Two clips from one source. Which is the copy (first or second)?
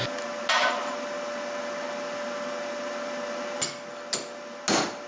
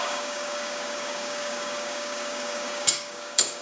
second